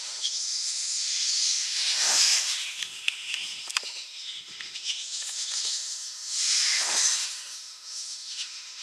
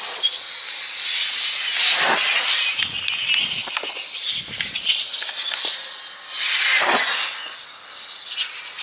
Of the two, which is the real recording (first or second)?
second